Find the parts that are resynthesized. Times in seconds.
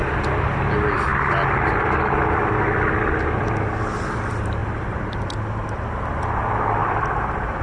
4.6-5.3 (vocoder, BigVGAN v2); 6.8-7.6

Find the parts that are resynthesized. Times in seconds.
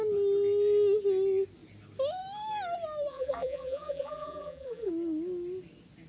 3.1-4.9 (vocoder, BigVGAN v2)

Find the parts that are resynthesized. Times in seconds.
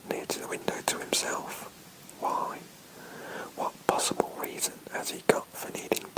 none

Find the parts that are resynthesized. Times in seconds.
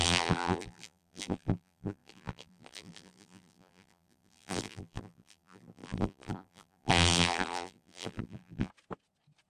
0.0-8.7 (vocoder, BigVGAN v2)